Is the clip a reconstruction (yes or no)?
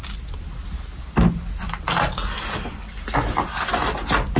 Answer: no